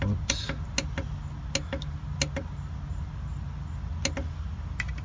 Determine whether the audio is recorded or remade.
recorded